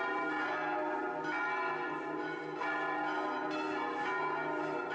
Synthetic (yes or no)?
no